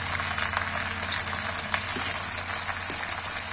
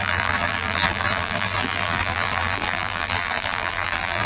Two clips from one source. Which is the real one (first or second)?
first